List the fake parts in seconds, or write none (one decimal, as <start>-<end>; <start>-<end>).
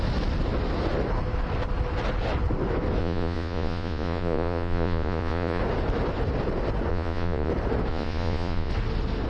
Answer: 3.0-5.6; 6.9-7.5; 7.9-8.7